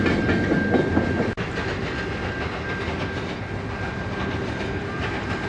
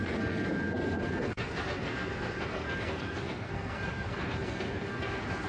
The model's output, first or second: second